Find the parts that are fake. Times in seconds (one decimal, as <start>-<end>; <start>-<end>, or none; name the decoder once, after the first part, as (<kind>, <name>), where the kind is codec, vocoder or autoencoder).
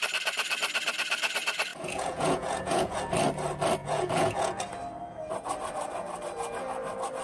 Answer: 1.7-3.0 (vocoder, Vocos); 3.8-4.6